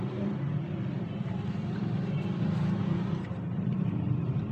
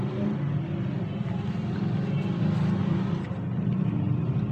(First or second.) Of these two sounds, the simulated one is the first